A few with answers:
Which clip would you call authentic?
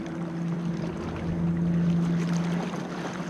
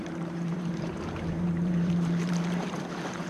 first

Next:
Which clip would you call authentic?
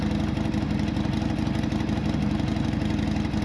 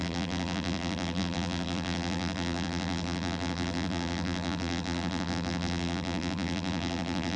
first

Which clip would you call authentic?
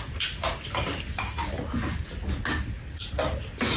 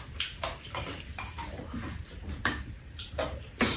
first